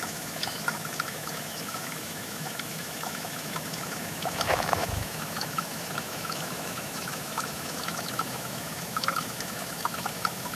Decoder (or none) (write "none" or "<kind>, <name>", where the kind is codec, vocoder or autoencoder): autoencoder, DAC-VAE